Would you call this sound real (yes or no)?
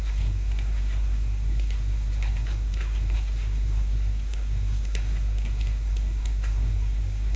no